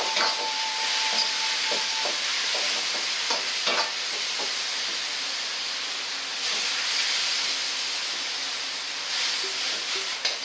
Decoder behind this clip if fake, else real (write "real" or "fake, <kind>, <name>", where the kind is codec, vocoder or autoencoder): real